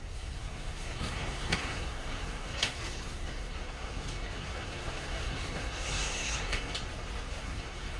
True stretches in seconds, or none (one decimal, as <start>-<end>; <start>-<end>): 6.7-7.3